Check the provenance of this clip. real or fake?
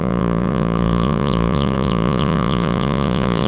fake